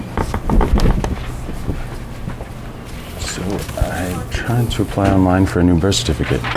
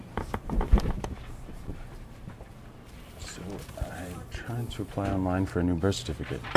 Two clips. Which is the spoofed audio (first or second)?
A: second